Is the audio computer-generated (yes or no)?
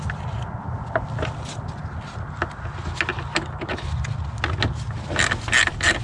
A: no